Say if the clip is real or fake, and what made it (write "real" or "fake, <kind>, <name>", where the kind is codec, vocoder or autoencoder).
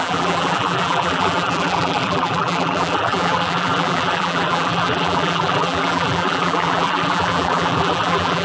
fake, vocoder, BigVGAN v2